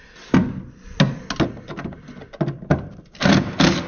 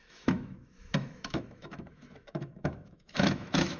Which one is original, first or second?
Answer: first